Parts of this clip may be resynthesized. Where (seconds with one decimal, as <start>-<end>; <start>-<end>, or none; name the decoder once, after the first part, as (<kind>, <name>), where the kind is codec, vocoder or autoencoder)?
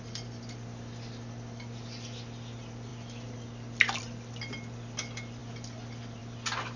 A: none